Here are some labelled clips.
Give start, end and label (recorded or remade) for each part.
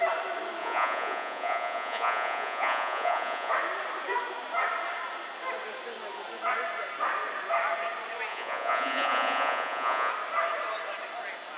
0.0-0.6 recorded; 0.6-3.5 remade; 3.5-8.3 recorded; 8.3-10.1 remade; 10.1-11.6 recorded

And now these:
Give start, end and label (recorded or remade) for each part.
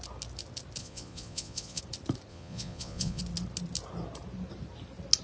0.0-0.8 recorded; 0.8-1.8 remade; 1.8-2.3 recorded; 2.3-3.2 remade; 3.2-5.2 recorded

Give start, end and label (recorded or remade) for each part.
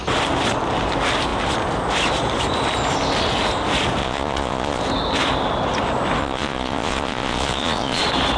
0.0-4.0 recorded; 4.0-4.8 remade; 4.8-6.2 recorded; 6.2-8.0 remade; 8.0-8.4 recorded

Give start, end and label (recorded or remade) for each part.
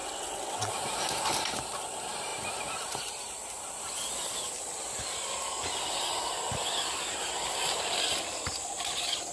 0.0-0.7 remade; 0.7-9.3 recorded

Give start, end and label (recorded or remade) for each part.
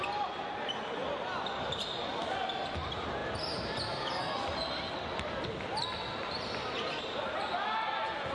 0.0-8.3 recorded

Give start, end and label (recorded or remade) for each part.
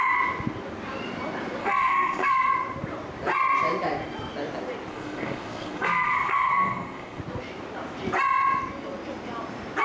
0.0-1.6 recorded; 1.6-2.5 remade; 2.5-4.9 recorded; 4.9-7.2 remade; 7.2-9.8 recorded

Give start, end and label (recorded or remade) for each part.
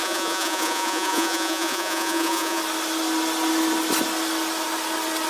0.0-2.6 remade; 2.6-5.3 recorded